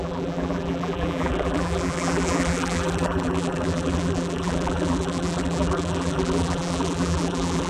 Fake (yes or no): yes